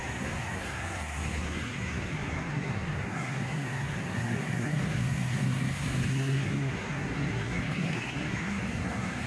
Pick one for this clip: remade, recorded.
remade